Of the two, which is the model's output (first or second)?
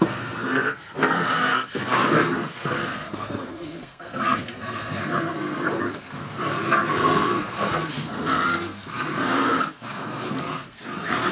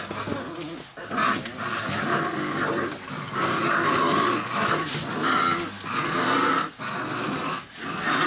first